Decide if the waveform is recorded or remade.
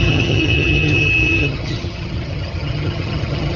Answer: remade